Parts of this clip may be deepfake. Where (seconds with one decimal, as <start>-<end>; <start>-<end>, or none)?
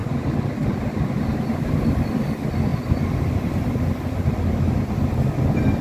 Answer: none